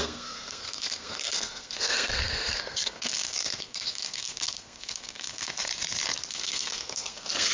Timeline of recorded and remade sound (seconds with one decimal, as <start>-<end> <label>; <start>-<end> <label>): 0.0-5.7 remade; 5.7-6.3 recorded; 6.3-7.5 remade